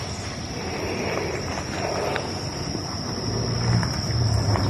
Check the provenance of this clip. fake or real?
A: real